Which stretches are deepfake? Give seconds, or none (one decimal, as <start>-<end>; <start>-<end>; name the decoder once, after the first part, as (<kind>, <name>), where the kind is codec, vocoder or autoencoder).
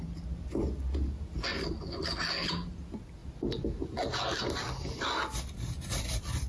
none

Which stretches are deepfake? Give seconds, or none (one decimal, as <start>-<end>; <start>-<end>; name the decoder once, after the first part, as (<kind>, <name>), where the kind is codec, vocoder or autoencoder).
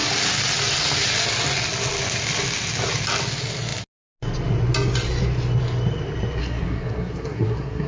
6.4-7.9 (codec, SNAC)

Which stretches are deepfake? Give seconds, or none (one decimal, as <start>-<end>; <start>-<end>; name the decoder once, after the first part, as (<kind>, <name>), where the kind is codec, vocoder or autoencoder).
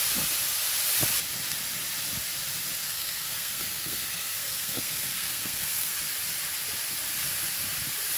2.8-6.0 (codec, SNAC)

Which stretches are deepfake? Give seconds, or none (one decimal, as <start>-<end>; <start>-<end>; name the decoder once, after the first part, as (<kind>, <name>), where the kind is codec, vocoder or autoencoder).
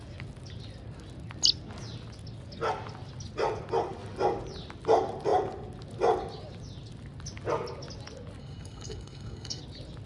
8.4-9.6 (codec, SNAC)